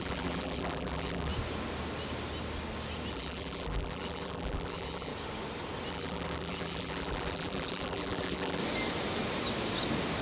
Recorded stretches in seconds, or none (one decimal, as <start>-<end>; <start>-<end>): 1.3-3.1; 5.1-5.9; 8.6-10.2